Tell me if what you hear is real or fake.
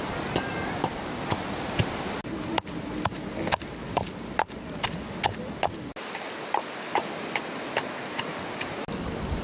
real